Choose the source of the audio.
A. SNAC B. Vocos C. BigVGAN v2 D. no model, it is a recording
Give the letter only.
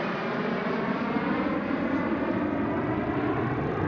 D